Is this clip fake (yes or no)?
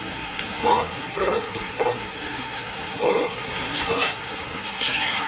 yes